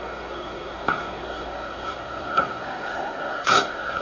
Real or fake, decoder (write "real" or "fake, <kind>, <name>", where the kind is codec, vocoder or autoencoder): fake, codec, SNAC